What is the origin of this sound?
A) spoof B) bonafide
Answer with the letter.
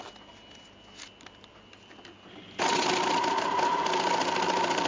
B